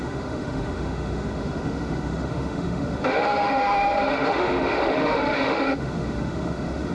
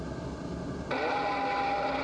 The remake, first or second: first